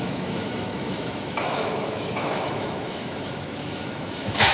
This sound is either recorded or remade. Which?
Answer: remade